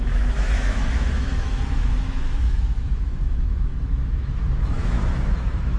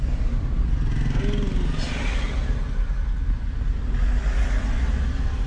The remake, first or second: first